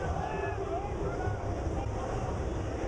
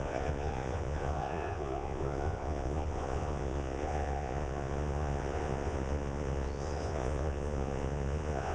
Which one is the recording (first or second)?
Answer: first